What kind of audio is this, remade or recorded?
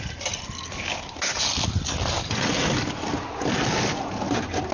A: recorded